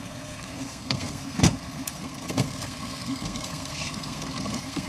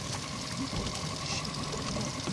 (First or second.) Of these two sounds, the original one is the second